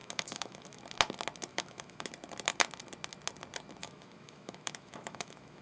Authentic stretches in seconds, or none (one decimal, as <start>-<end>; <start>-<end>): 0.8-1.5; 2.1-3.8